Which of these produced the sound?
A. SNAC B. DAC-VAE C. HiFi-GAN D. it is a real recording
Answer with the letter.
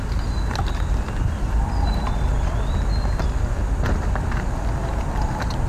D